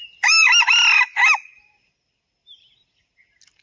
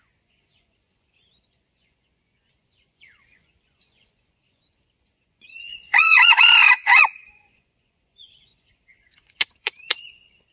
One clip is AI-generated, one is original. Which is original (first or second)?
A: first